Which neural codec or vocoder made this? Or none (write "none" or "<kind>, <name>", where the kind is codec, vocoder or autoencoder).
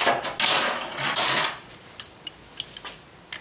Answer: none